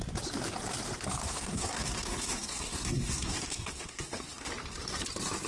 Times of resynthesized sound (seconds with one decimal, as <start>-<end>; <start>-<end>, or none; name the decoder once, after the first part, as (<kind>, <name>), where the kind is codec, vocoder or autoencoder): 1.2-4.5 (codec, SNAC)

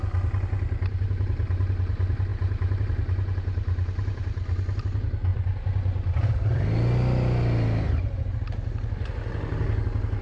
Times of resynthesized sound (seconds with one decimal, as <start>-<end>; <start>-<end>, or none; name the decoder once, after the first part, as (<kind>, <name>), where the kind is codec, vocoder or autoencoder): none